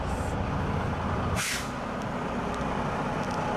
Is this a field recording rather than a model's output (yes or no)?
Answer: yes